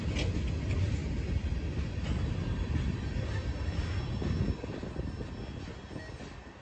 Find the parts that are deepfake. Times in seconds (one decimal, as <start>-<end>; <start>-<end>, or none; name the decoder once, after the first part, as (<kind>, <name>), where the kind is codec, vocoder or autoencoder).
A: none